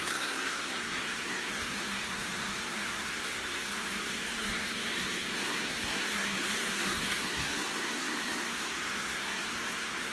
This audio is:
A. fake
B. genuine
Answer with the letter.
A